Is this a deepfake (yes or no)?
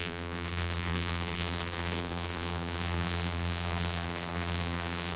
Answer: yes